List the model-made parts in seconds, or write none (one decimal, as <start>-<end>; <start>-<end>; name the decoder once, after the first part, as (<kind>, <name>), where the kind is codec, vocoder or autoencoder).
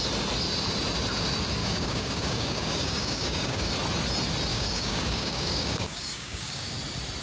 1.6-3.7 (codec, DAC); 4.5-6.7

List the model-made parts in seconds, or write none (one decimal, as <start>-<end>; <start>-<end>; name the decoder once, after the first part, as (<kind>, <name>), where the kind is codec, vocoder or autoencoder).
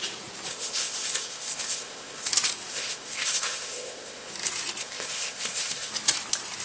0.5-2.3 (codec, ZipCodec); 2.7-4.3; 4.8-5.9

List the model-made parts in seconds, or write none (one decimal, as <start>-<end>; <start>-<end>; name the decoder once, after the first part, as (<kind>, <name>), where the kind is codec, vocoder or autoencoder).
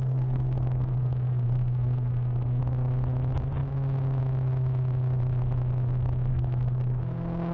0.0-2.6 (codec, SNAC); 6.3-7.0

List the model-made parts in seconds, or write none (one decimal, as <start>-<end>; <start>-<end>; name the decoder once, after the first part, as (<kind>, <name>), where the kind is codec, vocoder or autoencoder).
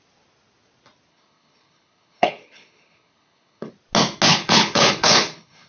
1.1-3.7 (codec, HILCodec); 4.3-5.7